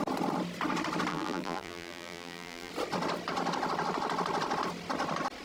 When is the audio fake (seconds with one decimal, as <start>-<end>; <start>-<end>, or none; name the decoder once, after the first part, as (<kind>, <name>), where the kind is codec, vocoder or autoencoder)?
1.1-2.7 (vocoder, BigVGAN v2)